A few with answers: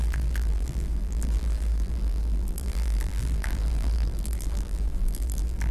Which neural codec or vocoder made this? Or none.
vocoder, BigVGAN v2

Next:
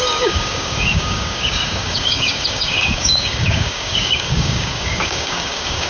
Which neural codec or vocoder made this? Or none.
codec, DAC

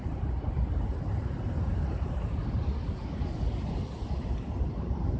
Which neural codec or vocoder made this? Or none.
none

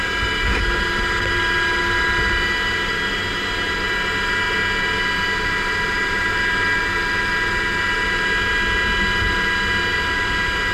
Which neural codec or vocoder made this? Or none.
none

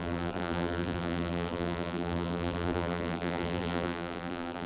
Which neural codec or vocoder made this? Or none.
vocoder, BigVGAN v2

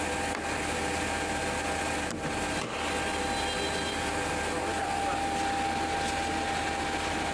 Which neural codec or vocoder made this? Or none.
none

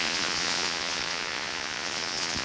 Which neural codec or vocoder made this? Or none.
vocoder, Vocos